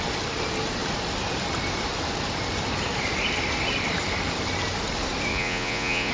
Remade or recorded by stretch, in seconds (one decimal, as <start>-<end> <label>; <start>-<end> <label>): 0.0-5.3 recorded; 5.3-6.1 remade